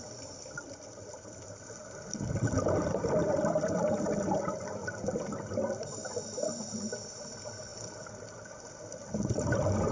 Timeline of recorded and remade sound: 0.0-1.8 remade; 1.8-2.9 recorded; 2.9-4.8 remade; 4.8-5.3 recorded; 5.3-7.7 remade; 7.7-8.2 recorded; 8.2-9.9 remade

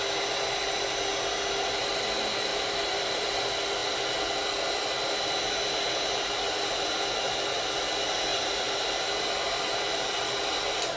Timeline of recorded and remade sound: 0.0-2.5 recorded; 2.5-3.3 remade; 3.3-8.3 recorded; 8.3-8.9 remade; 8.9-11.0 recorded

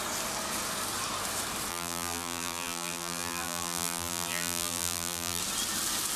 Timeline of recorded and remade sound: 0.0-1.7 recorded; 1.7-5.4 remade; 5.4-6.2 recorded

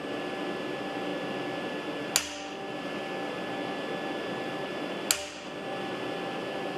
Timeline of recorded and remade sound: 0.0-6.8 recorded

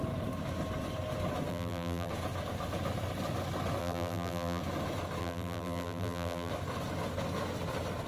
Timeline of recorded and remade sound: 0.0-1.5 recorded; 1.5-2.1 remade; 2.1-3.8 recorded; 3.8-4.6 remade; 4.6-5.2 recorded; 5.2-6.5 remade; 6.5-8.1 recorded

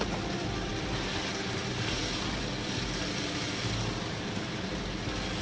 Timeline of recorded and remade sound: 0.0-0.7 remade; 0.7-1.3 recorded; 1.3-2.0 remade; 2.0-5.4 recorded

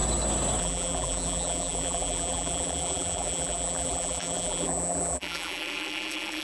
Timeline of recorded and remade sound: 0.0-0.6 recorded; 0.6-6.4 remade

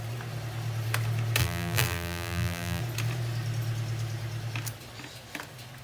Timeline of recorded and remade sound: 0.0-1.4 recorded; 1.4-2.8 remade; 2.8-5.8 recorded